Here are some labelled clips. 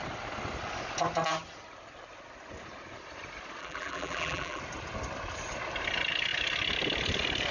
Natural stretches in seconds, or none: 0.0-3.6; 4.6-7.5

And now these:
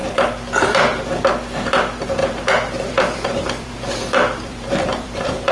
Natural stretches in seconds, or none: 1.2-2.2

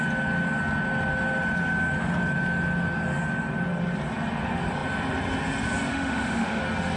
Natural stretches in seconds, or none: 0.0-5.9; 6.6-7.0

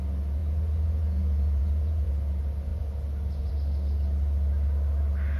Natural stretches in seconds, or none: 0.0-0.4; 2.1-5.4